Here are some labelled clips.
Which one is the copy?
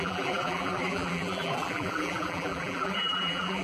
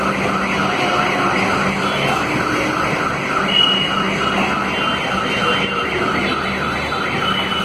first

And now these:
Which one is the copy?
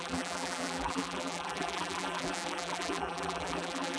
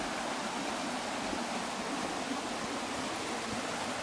first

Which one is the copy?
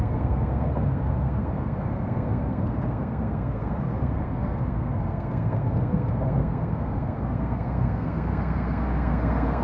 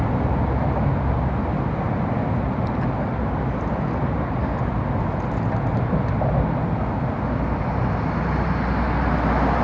first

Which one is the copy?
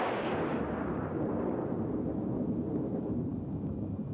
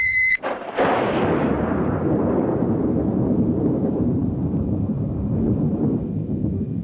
second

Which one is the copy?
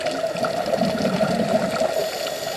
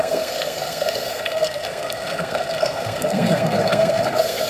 second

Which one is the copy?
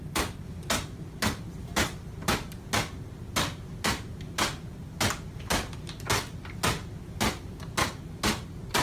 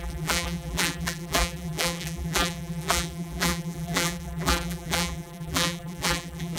second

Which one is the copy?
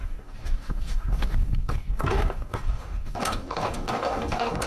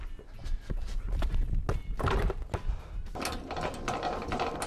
first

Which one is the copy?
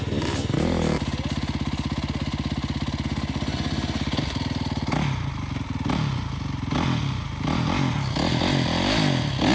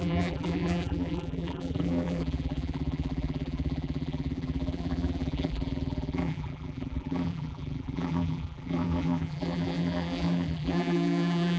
second